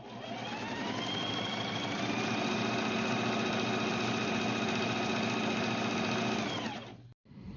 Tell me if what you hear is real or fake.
real